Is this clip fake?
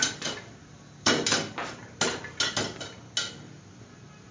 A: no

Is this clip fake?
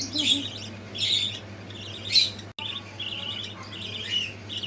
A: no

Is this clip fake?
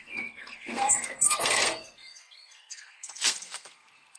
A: yes